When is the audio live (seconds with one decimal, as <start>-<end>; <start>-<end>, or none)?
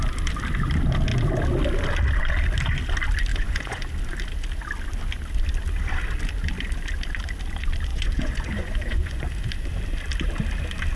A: 0.0-3.3; 3.8-7.9; 9.2-11.0